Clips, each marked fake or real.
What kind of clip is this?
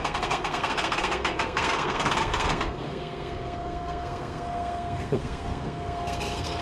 fake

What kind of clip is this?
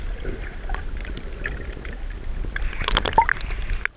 real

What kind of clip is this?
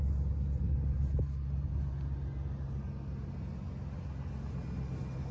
real